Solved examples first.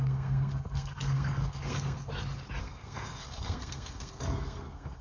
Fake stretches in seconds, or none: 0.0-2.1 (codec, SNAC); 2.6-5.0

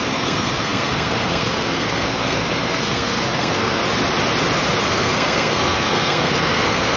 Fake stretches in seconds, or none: 0.0-3.8 (codec, SNAC); 4.9-7.0